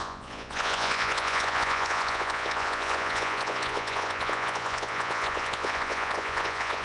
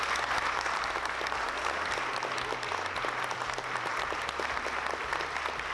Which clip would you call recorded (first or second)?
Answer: second